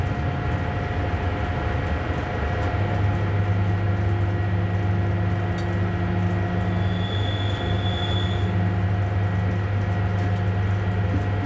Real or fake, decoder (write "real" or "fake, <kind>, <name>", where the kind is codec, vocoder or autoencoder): real